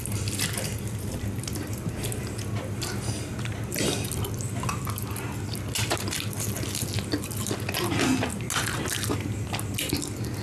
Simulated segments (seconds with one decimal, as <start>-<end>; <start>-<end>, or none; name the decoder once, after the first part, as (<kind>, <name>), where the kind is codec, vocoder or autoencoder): none